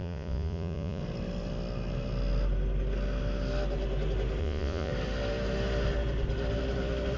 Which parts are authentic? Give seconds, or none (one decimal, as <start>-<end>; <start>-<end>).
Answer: 1.0-4.4; 4.9-7.2